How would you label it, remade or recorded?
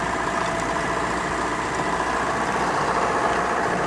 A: remade